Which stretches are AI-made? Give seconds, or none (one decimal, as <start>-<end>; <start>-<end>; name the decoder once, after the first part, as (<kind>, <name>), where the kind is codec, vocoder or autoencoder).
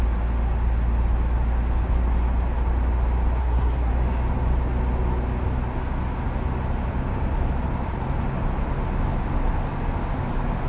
3.4-3.9 (codec, SNAC)